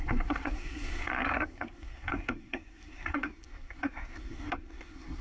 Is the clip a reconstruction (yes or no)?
yes